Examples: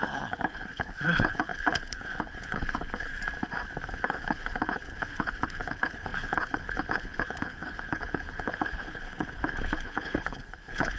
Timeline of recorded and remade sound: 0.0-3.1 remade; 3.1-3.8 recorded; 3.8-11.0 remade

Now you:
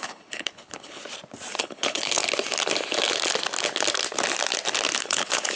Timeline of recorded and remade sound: 0.0-1.0 remade; 1.0-1.6 recorded; 1.6-2.2 remade; 2.2-5.0 recorded; 5.0-5.6 remade

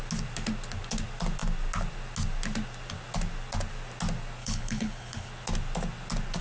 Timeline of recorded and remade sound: 0.0-4.4 recorded; 4.4-5.3 remade; 5.3-6.4 recorded

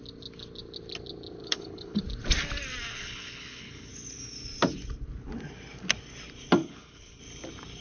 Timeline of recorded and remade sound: 0.0-1.4 recorded; 1.4-2.0 remade; 2.0-2.9 recorded; 2.9-3.9 remade; 3.9-6.6 recorded; 6.6-7.2 remade; 7.2-7.8 recorded

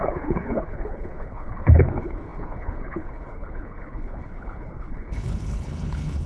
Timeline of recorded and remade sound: 0.0-6.3 remade

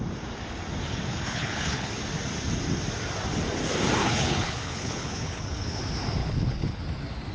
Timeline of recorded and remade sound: 0.0-1.1 recorded; 1.1-1.9 remade; 1.9-4.0 recorded; 4.0-5.8 remade; 5.8-6.2 recorded; 6.2-6.8 remade; 6.8-7.3 recorded